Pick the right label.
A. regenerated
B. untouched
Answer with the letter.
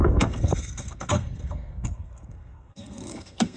A